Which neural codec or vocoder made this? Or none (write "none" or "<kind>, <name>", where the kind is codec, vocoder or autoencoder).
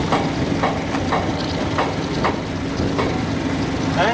none